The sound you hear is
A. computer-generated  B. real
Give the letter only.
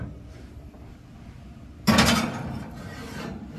B